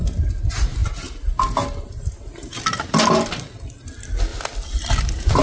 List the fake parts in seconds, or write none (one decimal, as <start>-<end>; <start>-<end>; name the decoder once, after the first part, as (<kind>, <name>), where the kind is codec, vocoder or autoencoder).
none